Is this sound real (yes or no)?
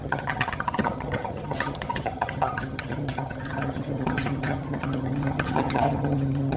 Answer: no